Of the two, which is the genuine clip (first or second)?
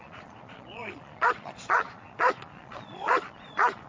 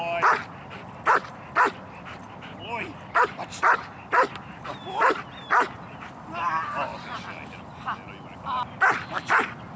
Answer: second